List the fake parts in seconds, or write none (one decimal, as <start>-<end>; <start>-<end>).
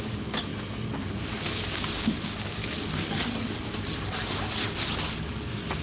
0.0-0.5; 1.5-2.6